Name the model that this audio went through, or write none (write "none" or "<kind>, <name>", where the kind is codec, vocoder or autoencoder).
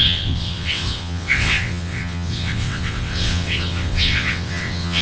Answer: vocoder, WaveNeXt